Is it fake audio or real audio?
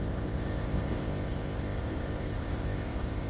fake